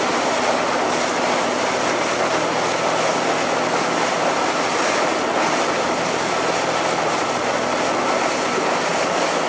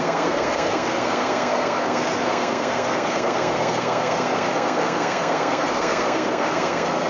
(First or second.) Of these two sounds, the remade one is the second